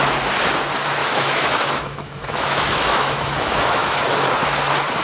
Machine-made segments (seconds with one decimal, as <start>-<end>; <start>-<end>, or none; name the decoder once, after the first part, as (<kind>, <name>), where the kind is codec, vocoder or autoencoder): 1.0-4.0 (autoencoder, DAC-VAE)

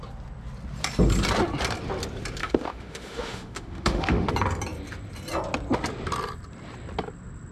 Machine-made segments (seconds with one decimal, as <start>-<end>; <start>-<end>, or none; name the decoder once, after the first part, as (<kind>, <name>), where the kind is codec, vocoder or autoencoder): 2.4-4.3 (autoencoder, DAC-VAE)

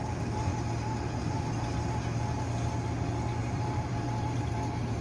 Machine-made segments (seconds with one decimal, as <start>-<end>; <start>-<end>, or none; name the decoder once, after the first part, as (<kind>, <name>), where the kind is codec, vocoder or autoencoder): 3.4-4.5 (vocoder, BigVGAN v2)

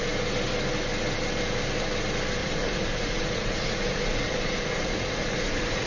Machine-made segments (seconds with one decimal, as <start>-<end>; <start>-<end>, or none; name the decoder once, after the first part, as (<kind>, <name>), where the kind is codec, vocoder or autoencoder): 2.4-5.9 (vocoder, Vocos)